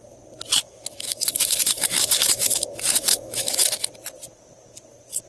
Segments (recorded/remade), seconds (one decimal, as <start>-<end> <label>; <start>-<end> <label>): 0.0-0.6 recorded; 0.6-3.8 remade; 3.8-5.3 recorded